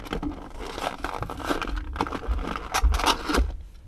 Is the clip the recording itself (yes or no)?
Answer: yes